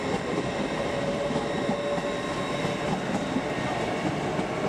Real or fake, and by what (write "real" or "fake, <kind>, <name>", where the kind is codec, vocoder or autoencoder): real